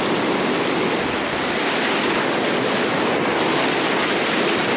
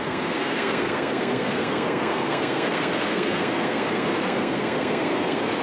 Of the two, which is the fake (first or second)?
second